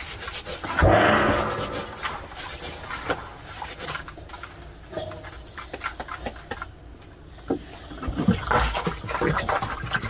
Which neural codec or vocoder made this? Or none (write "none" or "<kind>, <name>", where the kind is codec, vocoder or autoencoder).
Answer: none